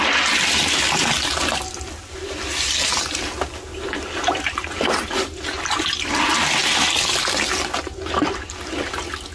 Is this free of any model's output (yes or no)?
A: yes